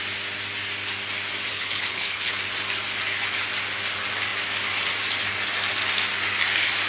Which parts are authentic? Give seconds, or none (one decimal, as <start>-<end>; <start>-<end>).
0.0-1.5; 2.3-6.9